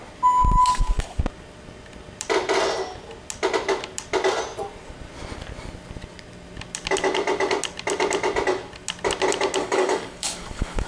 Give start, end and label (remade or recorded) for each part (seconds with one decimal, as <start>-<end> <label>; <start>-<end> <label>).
0.0-0.6 recorded; 0.6-1.2 remade; 1.2-9.6 recorded; 9.6-10.9 remade